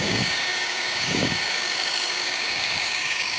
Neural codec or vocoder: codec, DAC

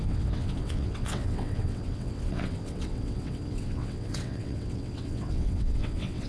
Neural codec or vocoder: vocoder, WaveNeXt